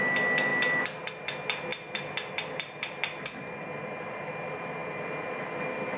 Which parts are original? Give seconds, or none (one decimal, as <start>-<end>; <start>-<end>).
0.0-6.0